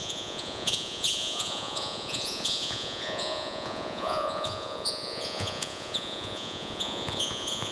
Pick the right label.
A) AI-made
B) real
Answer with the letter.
A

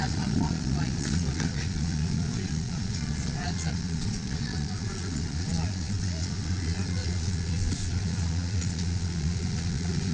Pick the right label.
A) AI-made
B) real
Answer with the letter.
A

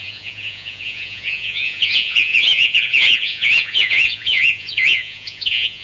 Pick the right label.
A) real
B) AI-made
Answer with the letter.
B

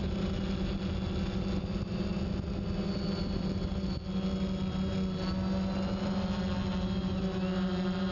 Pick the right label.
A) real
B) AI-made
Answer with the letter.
A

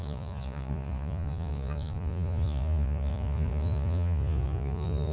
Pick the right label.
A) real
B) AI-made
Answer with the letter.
B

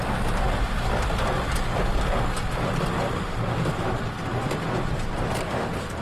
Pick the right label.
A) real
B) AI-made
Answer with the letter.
A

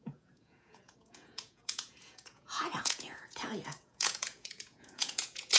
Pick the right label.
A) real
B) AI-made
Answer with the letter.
B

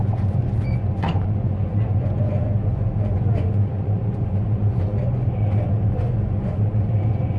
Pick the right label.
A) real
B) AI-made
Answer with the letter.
B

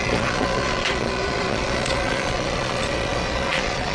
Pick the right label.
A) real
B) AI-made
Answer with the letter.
B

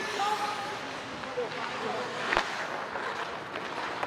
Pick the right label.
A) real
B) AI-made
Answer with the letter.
A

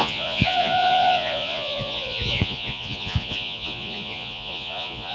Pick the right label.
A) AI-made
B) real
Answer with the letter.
A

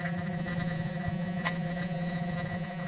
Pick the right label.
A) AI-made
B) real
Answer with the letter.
A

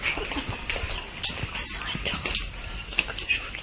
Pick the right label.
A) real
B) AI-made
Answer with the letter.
A